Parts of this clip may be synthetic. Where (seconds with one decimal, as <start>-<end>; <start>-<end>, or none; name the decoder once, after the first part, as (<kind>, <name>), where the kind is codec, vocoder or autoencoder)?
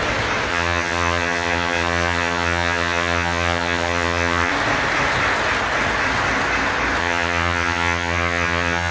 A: 0.5-4.5 (vocoder, HiFi-GAN); 7.0-8.9